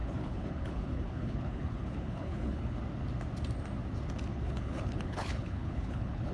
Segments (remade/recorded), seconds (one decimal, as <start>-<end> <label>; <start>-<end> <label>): 0.0-2.8 remade; 2.8-4.3 recorded; 4.3-6.3 remade

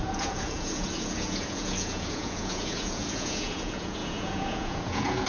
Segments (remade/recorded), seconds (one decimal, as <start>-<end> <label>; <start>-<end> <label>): 0.0-5.3 remade